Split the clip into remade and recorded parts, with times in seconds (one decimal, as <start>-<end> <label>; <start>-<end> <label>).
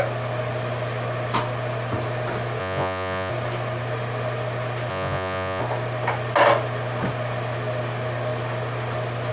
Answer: 0.0-2.6 recorded; 2.6-3.3 remade; 3.3-4.9 recorded; 4.9-5.6 remade; 5.6-9.3 recorded